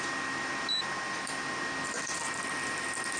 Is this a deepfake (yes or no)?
yes